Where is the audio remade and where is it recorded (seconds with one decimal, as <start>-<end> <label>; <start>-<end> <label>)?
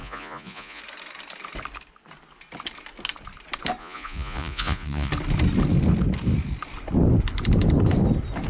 0.0-0.8 remade; 0.8-3.8 recorded; 3.8-5.1 remade; 5.1-8.5 recorded